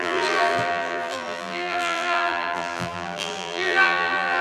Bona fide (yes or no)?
no